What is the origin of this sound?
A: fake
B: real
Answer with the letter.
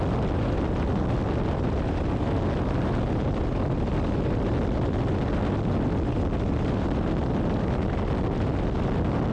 B